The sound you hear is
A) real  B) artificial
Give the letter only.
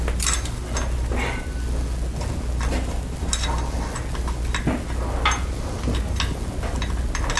A